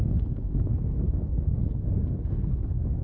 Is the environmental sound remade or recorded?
remade